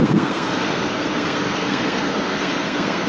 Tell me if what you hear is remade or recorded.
remade